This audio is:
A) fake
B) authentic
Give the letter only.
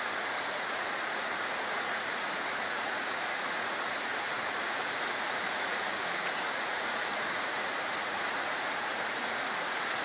A